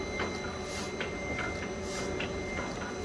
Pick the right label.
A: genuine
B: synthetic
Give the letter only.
A